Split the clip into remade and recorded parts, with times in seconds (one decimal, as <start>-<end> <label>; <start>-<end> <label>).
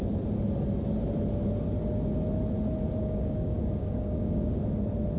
0.0-3.0 recorded; 3.0-4.6 remade; 4.6-5.2 recorded